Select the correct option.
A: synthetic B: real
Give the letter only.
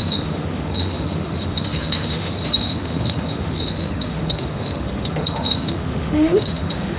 A